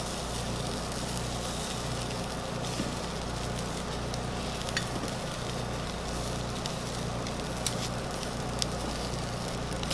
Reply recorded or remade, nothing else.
recorded